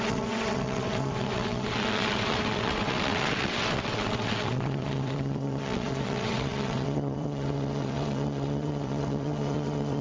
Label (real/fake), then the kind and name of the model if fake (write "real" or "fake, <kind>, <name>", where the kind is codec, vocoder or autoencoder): fake, vocoder, WaveNeXt